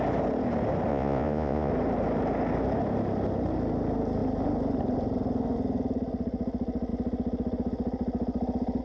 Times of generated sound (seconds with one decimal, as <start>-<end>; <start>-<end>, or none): 0.9-1.7

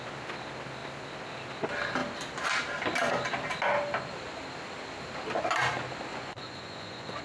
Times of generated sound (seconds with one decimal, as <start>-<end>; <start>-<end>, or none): 6.1-7.2

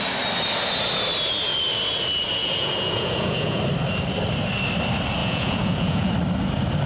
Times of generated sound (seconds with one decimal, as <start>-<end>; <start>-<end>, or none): 2.4-3.6; 5.2-6.1

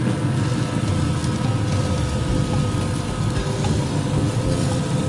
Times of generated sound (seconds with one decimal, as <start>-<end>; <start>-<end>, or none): none

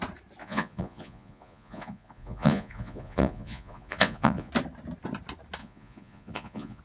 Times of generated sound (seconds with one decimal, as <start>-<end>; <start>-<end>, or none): 0.4-4.5; 5.6-6.8